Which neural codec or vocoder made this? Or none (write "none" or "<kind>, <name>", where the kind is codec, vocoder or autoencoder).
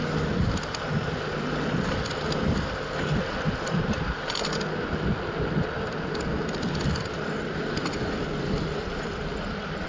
none